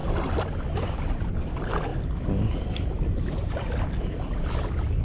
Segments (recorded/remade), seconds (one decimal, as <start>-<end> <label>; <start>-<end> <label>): 0.0-5.0 recorded